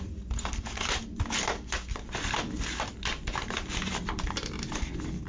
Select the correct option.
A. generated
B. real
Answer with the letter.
B